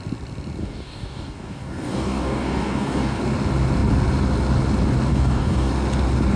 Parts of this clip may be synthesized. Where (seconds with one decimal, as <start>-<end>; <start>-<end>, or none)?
0.6-3.2; 5.1-5.7